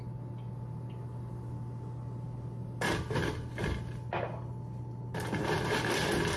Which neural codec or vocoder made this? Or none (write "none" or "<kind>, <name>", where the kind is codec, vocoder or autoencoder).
none